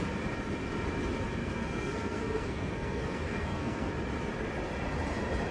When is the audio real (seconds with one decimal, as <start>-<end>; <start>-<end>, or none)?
0.0-1.4; 3.9-5.5